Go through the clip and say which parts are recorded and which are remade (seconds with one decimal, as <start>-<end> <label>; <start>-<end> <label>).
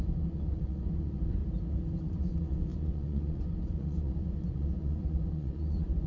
0.0-1.4 remade; 1.4-2.0 recorded; 2.0-6.1 remade